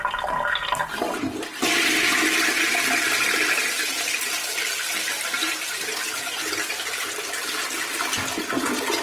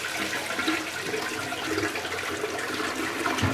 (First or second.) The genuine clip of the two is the second